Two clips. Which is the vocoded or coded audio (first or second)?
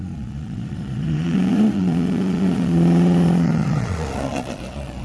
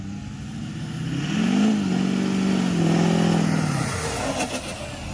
first